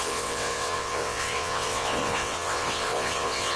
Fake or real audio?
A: fake